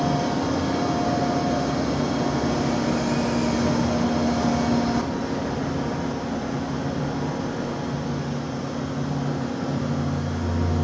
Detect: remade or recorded recorded